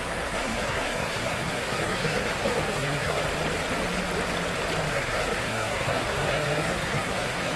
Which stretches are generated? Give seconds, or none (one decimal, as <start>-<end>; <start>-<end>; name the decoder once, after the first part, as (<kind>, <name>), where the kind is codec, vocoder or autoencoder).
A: 0.0-3.2 (codec, SNAC); 4.9-7.6